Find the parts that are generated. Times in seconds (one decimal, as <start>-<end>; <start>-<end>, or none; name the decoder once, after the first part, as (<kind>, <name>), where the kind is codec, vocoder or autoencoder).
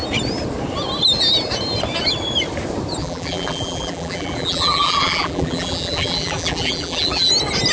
3.0-7.3 (vocoder, BigVGAN v2)